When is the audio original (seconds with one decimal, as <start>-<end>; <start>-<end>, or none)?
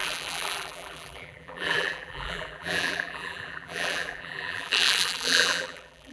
none